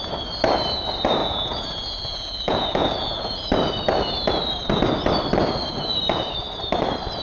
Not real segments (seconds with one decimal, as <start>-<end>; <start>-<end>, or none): 1.2-3.5